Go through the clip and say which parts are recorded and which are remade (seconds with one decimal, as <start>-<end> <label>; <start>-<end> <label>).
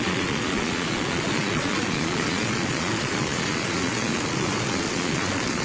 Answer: 0.0-5.6 remade